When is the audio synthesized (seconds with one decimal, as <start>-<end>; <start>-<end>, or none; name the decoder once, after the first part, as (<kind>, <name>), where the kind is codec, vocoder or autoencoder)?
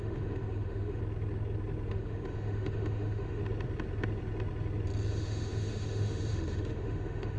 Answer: 0.0-1.0 (autoencoder, DAC-VAE); 1.9-3.4; 5.1-7.4